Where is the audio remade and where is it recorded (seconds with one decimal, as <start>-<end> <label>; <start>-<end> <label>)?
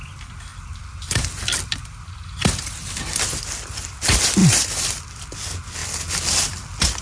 0.0-0.5 recorded; 0.5-3.3 remade; 3.3-4.4 recorded; 4.4-5.2 remade; 5.2-7.0 recorded